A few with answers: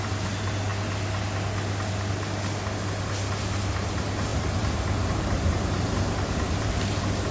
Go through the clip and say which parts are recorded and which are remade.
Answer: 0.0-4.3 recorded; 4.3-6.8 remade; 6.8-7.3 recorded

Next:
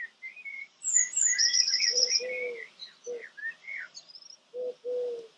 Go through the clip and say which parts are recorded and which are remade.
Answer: 0.0-0.5 recorded; 0.5-2.1 remade; 2.1-3.6 recorded; 3.6-4.1 remade; 4.1-5.4 recorded

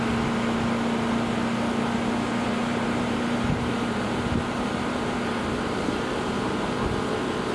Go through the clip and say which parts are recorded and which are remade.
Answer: 0.0-2.6 recorded; 2.6-7.1 remade; 7.1-7.5 recorded

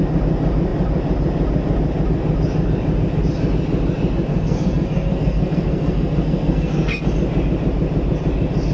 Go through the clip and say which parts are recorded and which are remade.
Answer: 0.0-4.3 recorded; 4.3-7.0 remade; 7.0-8.7 recorded